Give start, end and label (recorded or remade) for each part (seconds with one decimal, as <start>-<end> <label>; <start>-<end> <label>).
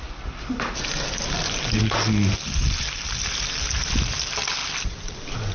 0.0-5.5 recorded